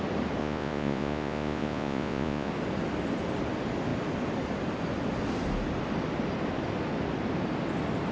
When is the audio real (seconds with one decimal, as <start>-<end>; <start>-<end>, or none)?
0.0-0.4; 2.5-8.1